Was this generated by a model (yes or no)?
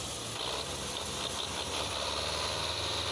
no